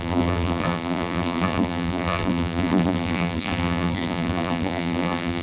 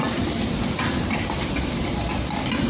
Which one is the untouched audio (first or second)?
second